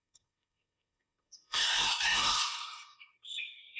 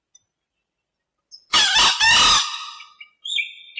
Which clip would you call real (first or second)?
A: second